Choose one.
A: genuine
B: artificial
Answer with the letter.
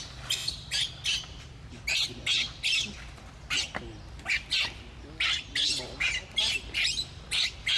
A